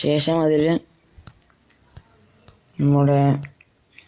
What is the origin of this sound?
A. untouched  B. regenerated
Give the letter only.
A